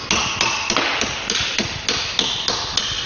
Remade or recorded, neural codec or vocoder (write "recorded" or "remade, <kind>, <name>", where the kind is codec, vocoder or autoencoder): recorded